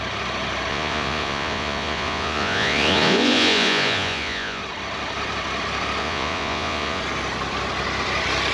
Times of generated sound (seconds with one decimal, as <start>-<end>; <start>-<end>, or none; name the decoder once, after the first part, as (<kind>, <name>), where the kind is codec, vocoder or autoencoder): 0.7-4.6 (vocoder, Vocos); 6.0-7.0